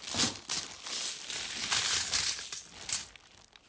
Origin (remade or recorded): recorded